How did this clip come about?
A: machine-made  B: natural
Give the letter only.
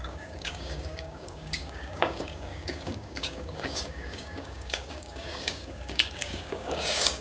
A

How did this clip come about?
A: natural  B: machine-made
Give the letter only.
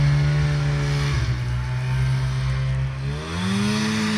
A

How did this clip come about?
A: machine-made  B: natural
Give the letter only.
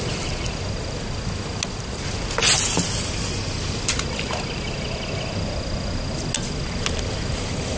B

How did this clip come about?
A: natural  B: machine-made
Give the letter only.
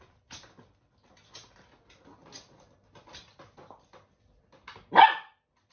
A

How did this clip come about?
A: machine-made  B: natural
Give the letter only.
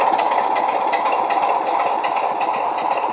B